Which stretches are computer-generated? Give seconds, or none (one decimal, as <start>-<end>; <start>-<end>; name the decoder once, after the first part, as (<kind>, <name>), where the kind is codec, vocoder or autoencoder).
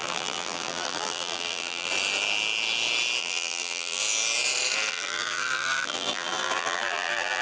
0.0-1.9 (vocoder, BigVGAN v2); 3.2-4.0; 4.9-7.4